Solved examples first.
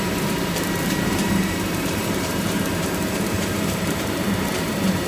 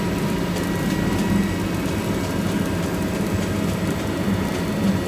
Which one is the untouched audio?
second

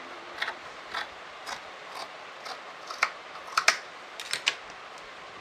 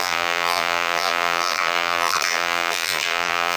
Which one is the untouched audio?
first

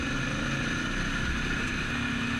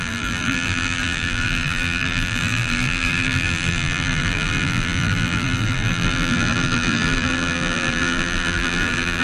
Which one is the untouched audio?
first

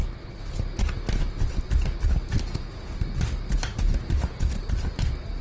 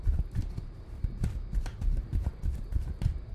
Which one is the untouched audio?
first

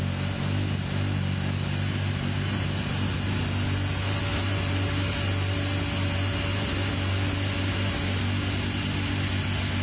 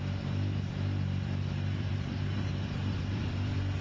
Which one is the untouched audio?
first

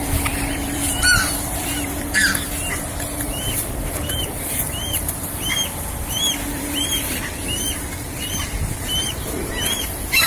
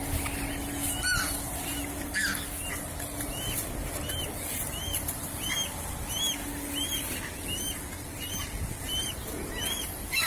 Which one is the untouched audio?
second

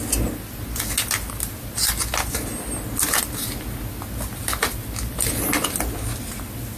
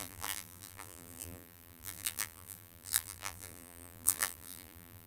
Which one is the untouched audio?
first